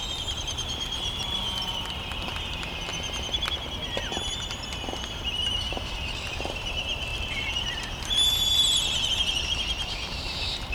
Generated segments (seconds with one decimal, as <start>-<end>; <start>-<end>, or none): 0.0-10.7